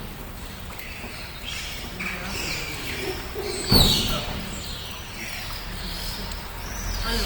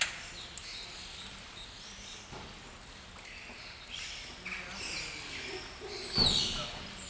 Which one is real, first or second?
second